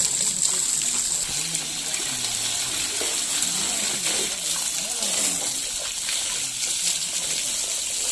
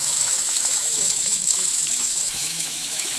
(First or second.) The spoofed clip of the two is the second